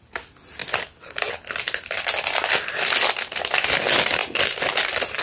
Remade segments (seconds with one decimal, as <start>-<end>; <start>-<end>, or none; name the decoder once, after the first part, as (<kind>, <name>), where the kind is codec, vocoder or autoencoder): none